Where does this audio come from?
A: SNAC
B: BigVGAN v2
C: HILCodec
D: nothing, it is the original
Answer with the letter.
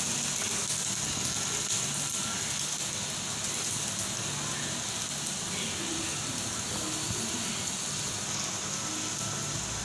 D